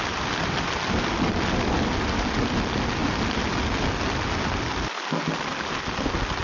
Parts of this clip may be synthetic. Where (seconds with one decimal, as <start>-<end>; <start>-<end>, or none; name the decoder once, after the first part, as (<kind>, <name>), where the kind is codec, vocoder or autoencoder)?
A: none